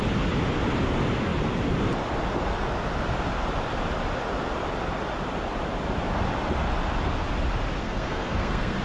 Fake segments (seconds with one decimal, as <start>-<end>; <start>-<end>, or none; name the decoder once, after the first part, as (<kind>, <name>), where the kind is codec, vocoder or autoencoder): 7.8-8.8 (codec, SNAC)